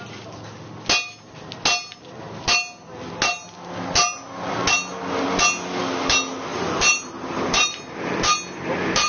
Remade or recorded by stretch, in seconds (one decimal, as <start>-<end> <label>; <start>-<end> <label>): 0.0-6.5 recorded; 6.5-7.8 remade; 7.8-9.1 recorded